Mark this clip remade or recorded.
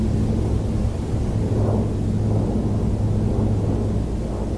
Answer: recorded